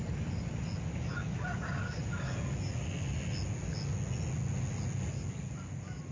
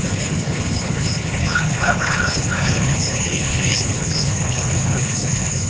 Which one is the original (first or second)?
first